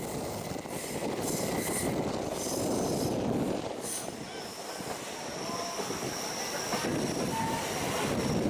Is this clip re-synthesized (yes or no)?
no